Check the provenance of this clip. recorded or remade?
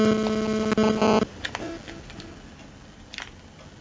recorded